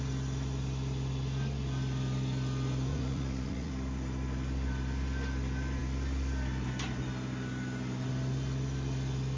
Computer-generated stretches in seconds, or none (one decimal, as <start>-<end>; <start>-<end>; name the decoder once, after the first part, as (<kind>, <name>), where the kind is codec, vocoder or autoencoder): 2.9-3.7 (vocoder, Vocos)